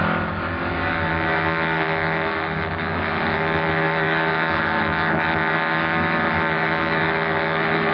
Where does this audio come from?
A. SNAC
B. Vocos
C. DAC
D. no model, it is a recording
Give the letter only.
C